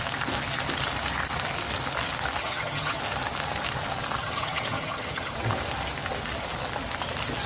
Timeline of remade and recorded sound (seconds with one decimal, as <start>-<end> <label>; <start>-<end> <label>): 0.0-2.4 recorded; 2.4-3.0 remade; 3.0-4.2 recorded; 4.2-5.3 remade; 5.3-7.5 recorded